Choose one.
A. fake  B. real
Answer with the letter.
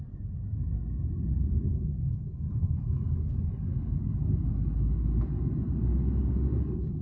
B